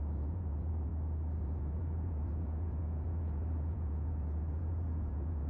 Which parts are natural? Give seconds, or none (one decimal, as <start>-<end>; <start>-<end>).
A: 0.9-1.4